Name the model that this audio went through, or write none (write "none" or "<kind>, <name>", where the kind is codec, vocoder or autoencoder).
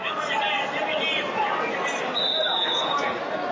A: none